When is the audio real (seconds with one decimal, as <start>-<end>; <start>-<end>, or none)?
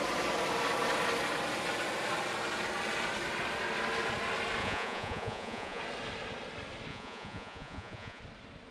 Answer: 0.0-4.6; 5.8-6.9; 8.2-8.7